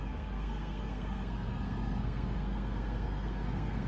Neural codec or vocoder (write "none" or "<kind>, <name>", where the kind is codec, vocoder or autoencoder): codec, SNAC